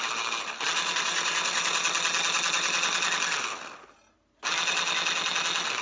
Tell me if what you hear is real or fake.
real